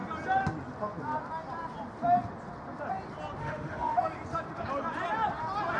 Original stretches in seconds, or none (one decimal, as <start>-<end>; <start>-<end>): 0.0-3.4; 4.0-5.8